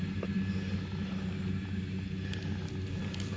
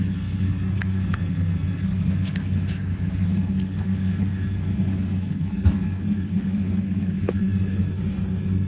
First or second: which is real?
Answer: first